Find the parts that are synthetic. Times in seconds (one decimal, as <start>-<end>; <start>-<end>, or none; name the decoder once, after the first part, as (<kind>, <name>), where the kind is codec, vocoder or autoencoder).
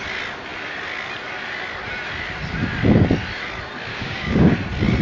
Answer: 3.9-4.5 (codec, DAC)